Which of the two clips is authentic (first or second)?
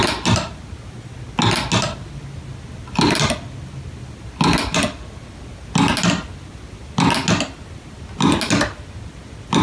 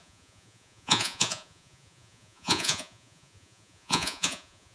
first